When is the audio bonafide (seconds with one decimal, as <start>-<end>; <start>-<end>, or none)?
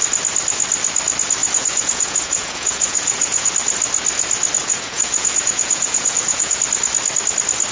0.0-1.4; 3.5-4.6; 6.6-7.7